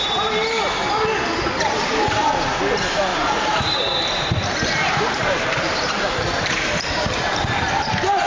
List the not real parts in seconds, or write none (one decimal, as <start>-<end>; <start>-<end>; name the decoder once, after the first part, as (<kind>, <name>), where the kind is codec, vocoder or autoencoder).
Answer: 3.1-7.6 (vocoder, BigVGAN v2)

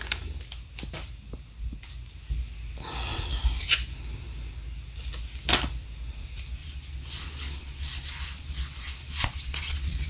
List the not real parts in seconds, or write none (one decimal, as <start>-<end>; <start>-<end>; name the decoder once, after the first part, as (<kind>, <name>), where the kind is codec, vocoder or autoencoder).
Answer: 6.6-10.1 (vocoder, Vocos)